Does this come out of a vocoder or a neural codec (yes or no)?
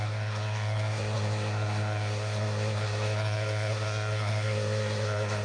yes